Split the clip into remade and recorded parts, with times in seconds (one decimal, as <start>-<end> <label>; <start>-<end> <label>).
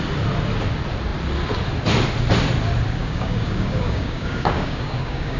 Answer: 0.0-3.0 recorded; 3.0-5.4 remade